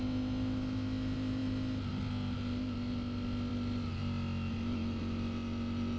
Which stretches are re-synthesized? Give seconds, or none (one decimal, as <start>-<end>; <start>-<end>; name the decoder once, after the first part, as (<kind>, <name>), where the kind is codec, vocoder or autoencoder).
none